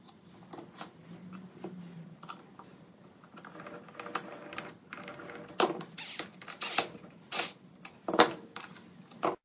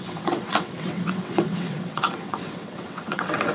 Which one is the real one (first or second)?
first